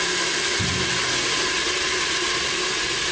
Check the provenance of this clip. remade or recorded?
recorded